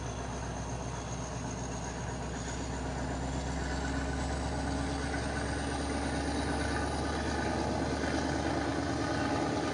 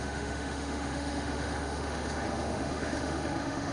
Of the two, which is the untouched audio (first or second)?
first